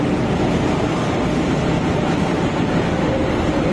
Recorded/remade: recorded